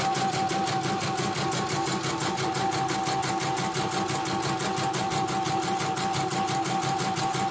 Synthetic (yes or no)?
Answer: no